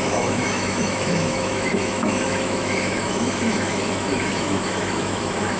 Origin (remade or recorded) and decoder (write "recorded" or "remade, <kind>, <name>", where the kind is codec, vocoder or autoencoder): remade, autoencoder, DAC-VAE